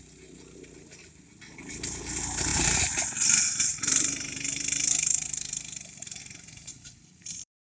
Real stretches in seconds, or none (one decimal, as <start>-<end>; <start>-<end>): 0.0-2.5; 6.2-6.7